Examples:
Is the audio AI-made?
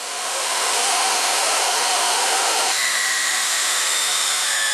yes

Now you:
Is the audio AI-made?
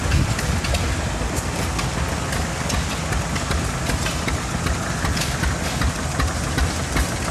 no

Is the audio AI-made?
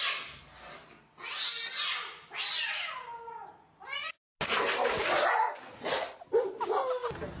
no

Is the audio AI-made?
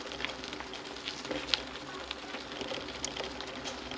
no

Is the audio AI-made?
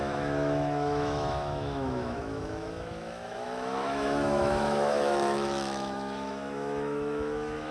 yes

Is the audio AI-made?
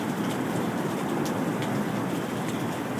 no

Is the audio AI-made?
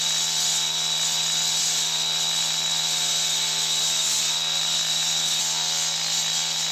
no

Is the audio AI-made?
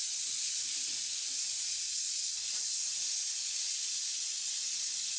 no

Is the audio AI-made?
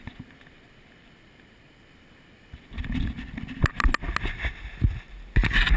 no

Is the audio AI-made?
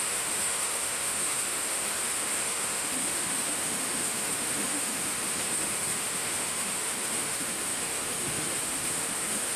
yes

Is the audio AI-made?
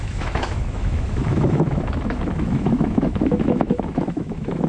yes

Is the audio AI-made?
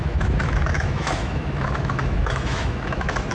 yes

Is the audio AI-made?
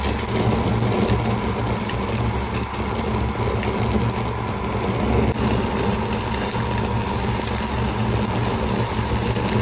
no